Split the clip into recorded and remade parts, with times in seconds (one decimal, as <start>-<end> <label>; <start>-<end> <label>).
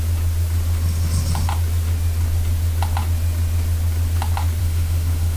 0.0-4.6 recorded; 4.6-5.4 remade